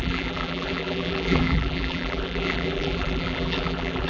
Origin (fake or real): fake